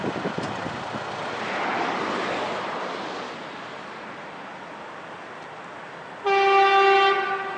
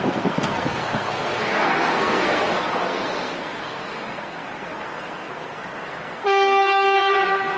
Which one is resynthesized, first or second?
second